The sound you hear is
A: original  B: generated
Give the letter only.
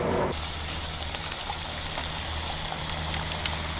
A